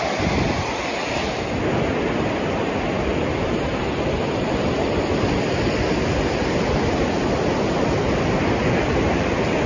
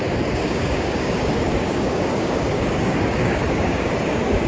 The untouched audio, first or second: first